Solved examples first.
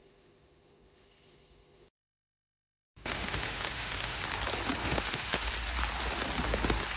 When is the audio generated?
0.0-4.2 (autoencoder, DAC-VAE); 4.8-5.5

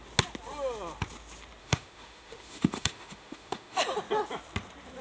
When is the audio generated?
1.6-3.8 (autoencoder, DAC-VAE)

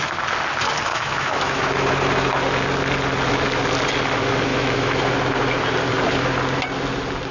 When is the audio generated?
0.9-1.9 (autoencoder, DAC-VAE); 4.5-5.1

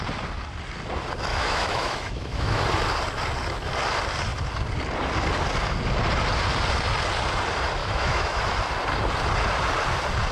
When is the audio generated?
1.3-2.6 (autoencoder, DAC-VAE); 7.8-8.4

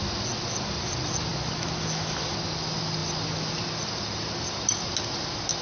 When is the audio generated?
none

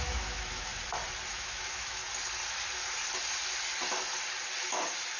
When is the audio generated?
0.0-0.7 (autoencoder, DAC-VAE); 1.3-2.0

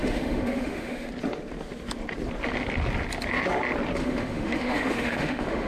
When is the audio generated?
0.0-1.1 (autoencoder, DAC-VAE); 4.0-5.7